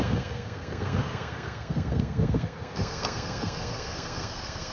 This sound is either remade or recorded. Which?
remade